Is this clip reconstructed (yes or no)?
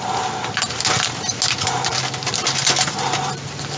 no